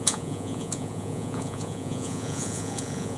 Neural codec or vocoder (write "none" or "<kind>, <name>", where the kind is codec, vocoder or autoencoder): vocoder, Vocos